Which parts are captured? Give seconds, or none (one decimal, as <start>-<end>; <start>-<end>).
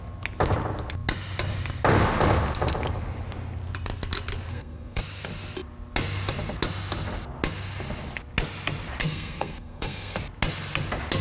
0.0-4.5; 5.0-9.0; 10.2-11.2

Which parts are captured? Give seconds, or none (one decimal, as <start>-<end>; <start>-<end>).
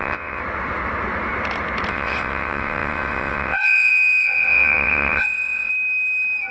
0.4-1.9; 5.7-6.5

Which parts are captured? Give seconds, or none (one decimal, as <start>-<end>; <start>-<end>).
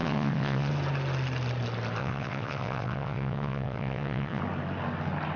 0.7-2.0; 4.4-5.4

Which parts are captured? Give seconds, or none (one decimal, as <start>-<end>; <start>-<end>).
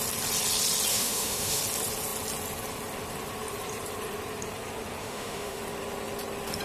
0.0-0.9; 1.6-5.0; 5.6-6.6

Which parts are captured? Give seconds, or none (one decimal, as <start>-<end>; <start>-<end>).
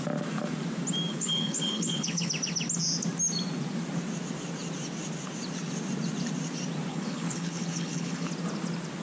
0.0-1.1; 2.3-6.9; 8.3-9.0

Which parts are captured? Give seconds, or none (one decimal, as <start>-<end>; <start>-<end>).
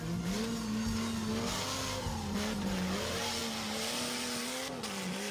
0.0-5.3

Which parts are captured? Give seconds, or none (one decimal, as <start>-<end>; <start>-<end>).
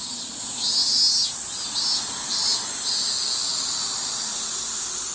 0.0-5.1